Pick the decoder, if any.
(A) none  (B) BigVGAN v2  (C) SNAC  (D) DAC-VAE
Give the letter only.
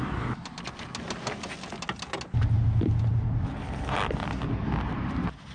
A